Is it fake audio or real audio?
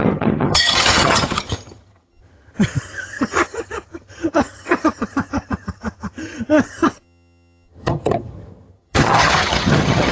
fake